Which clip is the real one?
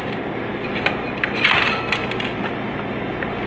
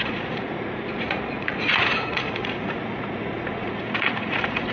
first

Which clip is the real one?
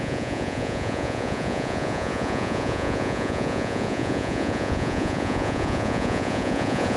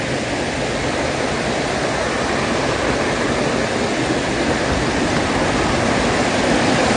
second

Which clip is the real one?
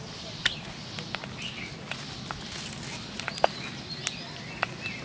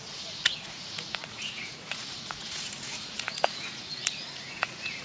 first